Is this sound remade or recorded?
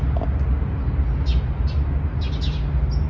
recorded